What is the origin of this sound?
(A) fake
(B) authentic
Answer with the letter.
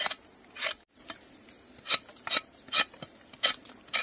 B